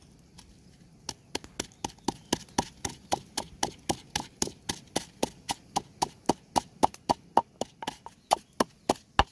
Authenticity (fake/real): real